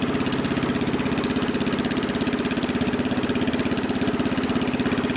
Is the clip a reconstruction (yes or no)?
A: no